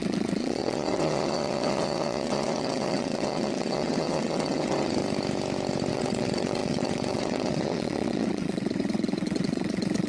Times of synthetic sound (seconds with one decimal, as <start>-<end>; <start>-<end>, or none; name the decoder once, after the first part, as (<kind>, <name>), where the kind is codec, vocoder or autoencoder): 0.0-5.0 (vocoder, WaveNeXt); 5.9-10.1